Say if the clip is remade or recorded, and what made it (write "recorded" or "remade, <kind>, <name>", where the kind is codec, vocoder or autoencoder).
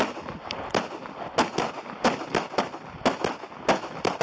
recorded